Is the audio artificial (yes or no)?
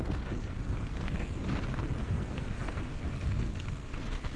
yes